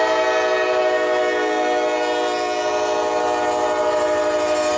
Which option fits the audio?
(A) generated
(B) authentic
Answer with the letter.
B